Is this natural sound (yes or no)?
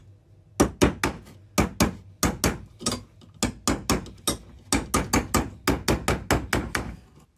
yes